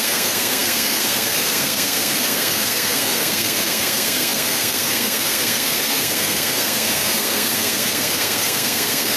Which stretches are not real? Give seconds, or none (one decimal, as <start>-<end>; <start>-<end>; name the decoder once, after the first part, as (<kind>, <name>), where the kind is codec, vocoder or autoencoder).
0.0-9.2 (codec, SNAC)